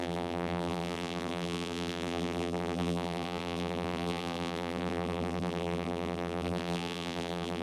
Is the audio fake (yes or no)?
yes